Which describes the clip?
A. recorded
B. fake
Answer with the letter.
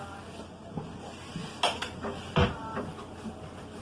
A